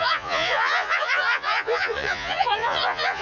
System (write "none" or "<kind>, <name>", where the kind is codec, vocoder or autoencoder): vocoder, Vocos